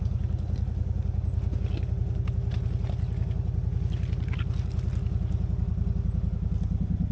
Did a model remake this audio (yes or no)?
no